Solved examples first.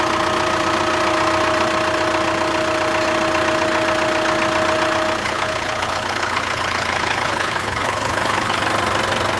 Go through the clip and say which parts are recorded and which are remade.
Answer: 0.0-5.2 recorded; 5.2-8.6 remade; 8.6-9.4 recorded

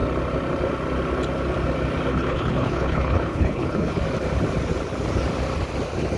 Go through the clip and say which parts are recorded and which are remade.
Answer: 0.0-2.1 recorded; 2.1-4.0 remade; 4.0-6.2 recorded

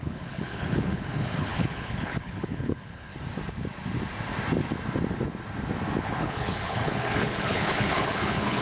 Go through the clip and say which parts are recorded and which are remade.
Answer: 0.0-3.1 remade; 3.1-6.0 recorded; 6.0-8.6 remade